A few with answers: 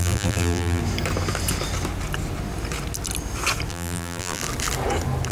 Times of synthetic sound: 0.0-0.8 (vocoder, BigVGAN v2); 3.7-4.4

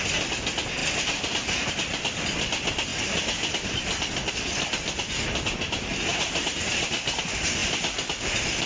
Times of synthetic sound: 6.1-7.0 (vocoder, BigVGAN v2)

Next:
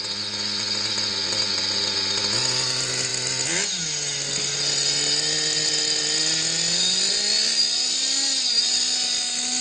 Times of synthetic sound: none